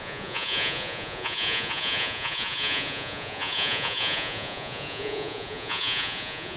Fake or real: fake